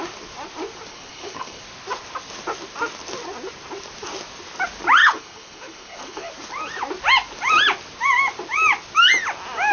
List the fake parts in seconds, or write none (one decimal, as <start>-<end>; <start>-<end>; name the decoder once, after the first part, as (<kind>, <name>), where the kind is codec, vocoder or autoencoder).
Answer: 0.9-1.6 (codec, HILCodec); 5.0-6.3